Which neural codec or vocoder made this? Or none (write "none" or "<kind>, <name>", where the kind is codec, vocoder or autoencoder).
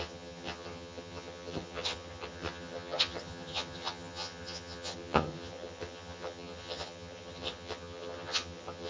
vocoder, HiFi-GAN